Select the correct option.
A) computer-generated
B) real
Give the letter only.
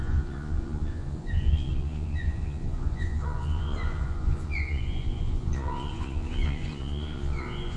A